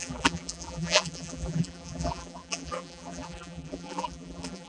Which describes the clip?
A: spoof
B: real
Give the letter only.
A